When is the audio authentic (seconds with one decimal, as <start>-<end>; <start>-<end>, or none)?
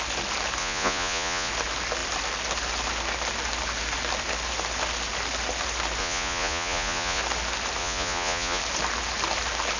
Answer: 0.0-0.6; 1.5-6.0; 7.2-7.8; 8.6-9.8